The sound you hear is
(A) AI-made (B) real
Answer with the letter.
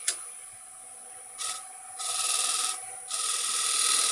A